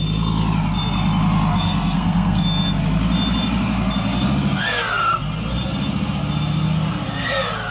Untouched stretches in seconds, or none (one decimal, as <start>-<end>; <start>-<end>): 0.0-1.5; 2.8-7.7